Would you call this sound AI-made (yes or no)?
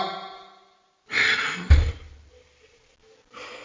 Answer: no